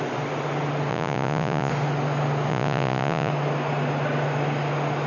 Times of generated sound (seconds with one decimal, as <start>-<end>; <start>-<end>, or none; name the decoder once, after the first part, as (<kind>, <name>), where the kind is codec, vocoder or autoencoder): 0.9-1.7 (vocoder, Vocos); 2.5-3.3